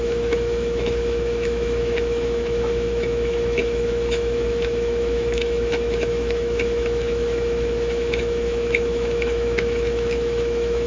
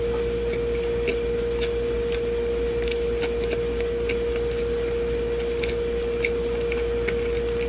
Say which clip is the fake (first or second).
first